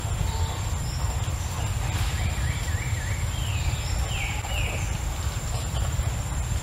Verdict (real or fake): fake